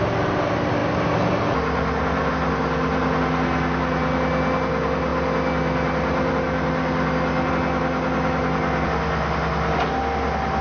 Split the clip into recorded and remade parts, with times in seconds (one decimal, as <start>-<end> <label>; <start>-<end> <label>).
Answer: 0.0-10.6 recorded